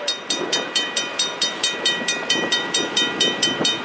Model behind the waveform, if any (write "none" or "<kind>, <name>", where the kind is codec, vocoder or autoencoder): vocoder, BigVGAN v2